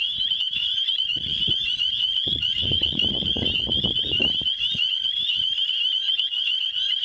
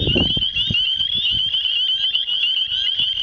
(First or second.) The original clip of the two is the second